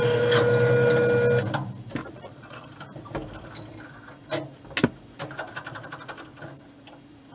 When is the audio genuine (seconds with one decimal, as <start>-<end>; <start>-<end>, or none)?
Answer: 0.0-2.0; 2.7-7.3